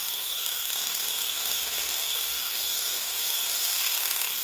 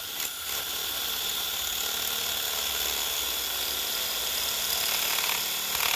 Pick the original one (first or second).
second